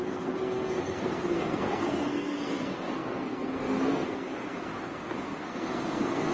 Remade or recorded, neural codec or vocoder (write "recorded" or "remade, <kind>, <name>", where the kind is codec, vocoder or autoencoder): remade, codec, SNAC